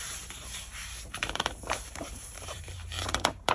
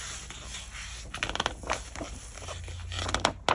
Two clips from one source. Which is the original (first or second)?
second